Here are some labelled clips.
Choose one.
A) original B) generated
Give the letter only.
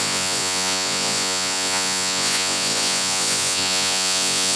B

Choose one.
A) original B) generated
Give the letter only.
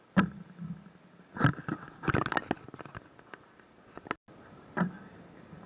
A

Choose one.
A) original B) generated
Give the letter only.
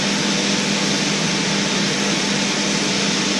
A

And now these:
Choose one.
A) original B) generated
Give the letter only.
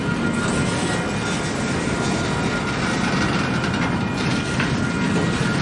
A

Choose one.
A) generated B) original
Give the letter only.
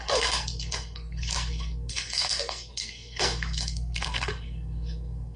A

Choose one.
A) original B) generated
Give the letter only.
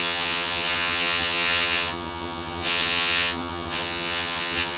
B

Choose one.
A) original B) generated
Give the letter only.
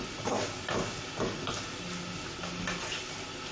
A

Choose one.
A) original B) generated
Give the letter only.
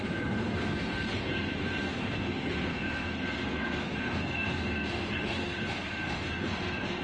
B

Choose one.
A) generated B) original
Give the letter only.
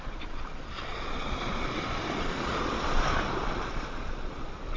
A